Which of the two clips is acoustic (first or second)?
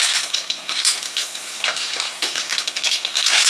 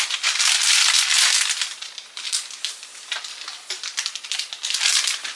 second